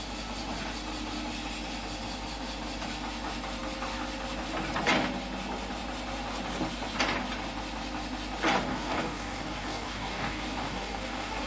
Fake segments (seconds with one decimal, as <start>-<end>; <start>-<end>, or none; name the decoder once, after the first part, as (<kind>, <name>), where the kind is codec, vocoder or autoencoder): 8.7-11.5 (codec, DAC)